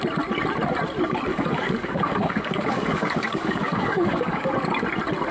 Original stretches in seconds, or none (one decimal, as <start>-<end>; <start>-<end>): 0.0-1.3; 4.5-5.3